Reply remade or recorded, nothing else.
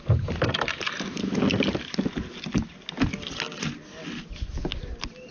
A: recorded